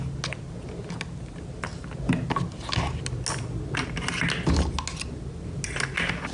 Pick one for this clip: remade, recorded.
recorded